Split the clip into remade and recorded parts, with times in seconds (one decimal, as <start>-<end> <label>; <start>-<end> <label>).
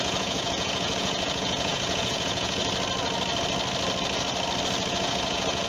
0.0-2.6 remade; 2.6-4.9 recorded; 4.9-5.7 remade